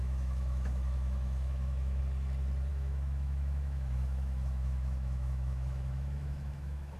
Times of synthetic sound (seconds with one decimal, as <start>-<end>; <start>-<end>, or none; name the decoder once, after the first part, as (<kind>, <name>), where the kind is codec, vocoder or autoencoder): 0.0-2.0 (autoencoder, DAC-VAE); 2.7-7.0